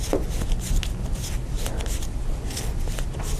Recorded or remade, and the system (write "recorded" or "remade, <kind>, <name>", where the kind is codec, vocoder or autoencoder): recorded